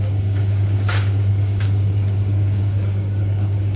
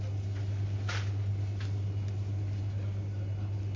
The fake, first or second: first